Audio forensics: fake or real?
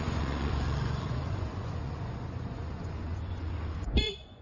fake